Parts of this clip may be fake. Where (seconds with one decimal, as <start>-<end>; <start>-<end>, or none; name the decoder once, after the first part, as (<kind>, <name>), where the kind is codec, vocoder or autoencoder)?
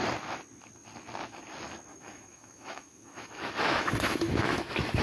1.9-5.0 (autoencoder, DAC-VAE)